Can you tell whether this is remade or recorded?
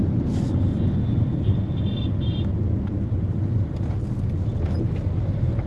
recorded